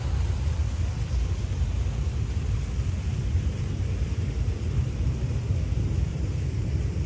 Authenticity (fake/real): real